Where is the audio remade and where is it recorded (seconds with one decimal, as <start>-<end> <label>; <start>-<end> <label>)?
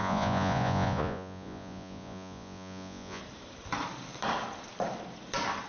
0.0-3.2 remade; 3.2-5.7 recorded